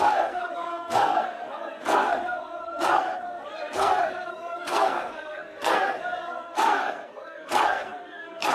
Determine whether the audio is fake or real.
fake